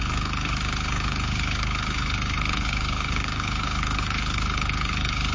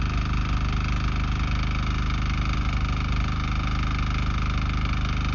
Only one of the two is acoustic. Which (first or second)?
second